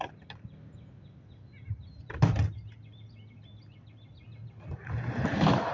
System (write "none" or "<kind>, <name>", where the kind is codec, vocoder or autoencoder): none